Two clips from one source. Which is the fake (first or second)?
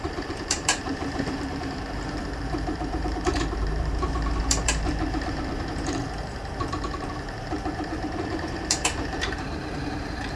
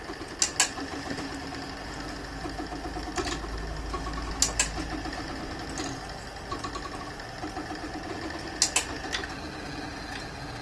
first